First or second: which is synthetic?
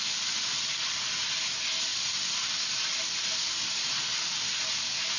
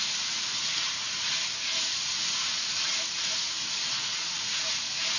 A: second